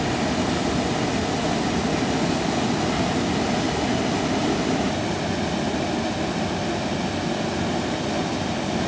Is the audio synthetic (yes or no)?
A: no